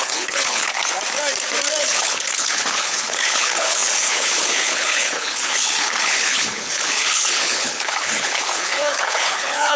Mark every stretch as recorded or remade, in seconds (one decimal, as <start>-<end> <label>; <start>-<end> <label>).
0.0-0.8 remade; 0.8-1.8 recorded; 1.8-9.8 remade